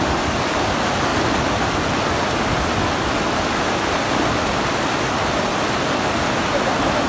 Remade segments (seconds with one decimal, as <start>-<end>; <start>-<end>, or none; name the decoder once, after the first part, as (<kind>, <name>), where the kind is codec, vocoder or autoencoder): none